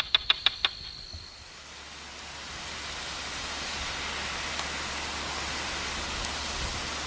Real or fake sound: real